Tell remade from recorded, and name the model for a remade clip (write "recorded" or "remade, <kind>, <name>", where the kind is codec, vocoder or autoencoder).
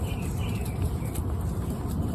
remade, vocoder, BigVGAN v2